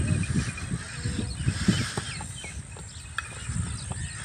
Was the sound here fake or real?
real